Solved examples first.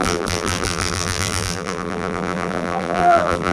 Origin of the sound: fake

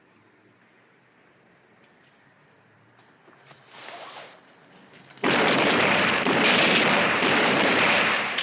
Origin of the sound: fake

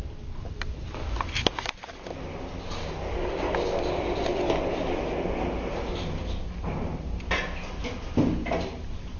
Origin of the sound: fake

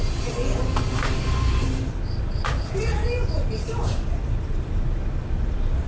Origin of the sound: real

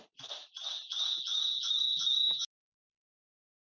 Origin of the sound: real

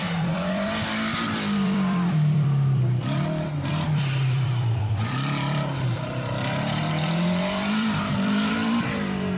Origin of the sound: fake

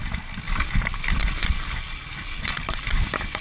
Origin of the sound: real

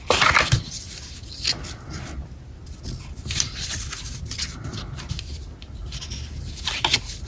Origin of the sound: real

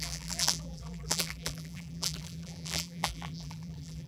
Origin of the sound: fake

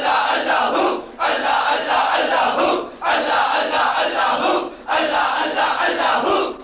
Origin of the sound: real